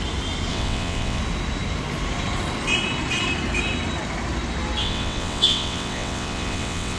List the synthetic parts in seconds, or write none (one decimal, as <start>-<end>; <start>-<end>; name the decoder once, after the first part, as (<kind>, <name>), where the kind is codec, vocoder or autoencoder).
0.5-1.2 (vocoder, WaveNeXt); 4.8-7.0